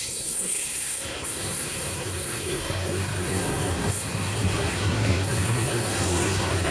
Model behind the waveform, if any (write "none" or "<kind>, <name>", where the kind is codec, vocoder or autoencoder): codec, SNAC